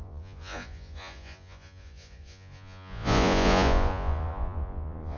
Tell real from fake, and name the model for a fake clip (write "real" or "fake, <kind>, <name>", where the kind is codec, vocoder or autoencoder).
fake, vocoder, Vocos